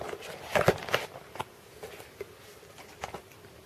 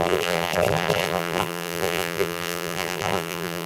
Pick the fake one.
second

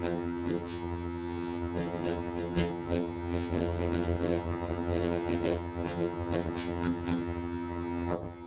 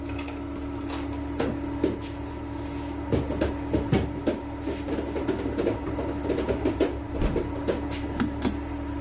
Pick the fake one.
first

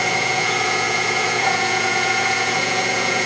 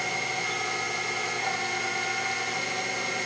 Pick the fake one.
first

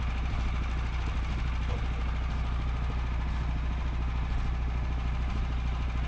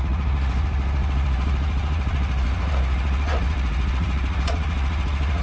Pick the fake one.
second